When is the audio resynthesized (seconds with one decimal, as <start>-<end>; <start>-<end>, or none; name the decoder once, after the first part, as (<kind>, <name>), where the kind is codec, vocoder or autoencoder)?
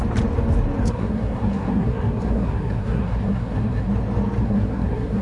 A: 0.8-3.9 (codec, SNAC); 4.4-5.2